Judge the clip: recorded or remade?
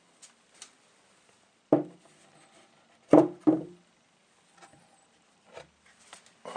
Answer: recorded